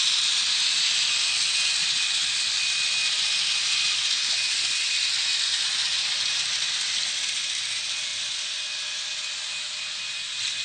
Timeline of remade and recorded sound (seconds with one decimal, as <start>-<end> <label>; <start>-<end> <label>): 0.0-1.8 recorded; 1.8-2.4 remade; 2.4-10.6 recorded